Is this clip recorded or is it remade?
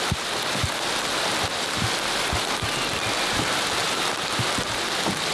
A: recorded